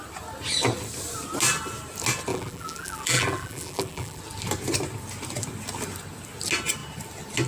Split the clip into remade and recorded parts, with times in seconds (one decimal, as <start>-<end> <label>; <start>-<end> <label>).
0.0-2.3 recorded; 2.3-4.2 remade; 4.2-7.5 recorded